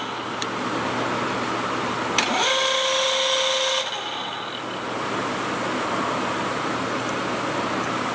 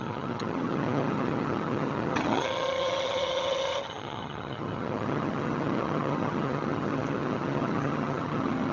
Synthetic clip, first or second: second